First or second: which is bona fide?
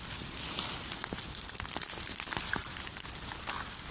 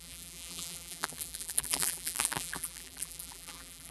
first